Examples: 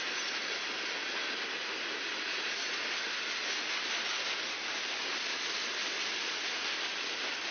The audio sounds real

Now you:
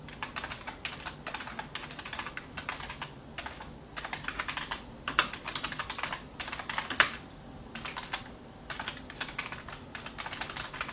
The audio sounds real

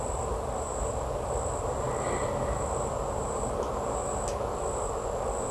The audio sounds real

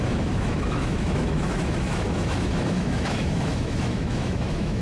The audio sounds fake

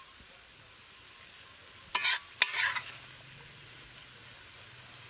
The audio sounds real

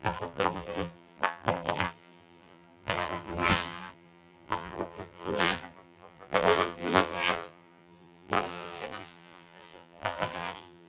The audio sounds fake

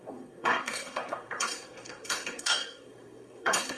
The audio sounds fake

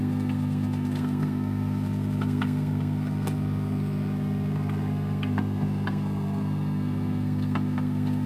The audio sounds fake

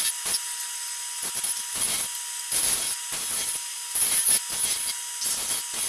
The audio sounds real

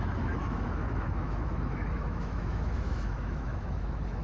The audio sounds fake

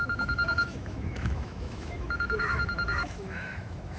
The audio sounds fake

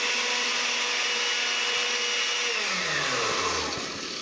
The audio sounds real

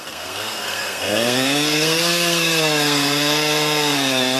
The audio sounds fake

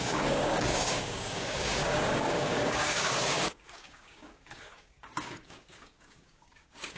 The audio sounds fake